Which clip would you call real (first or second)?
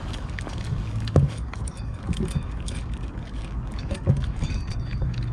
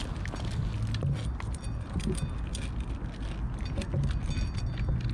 second